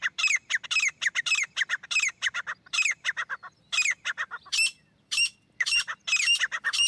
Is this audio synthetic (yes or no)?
yes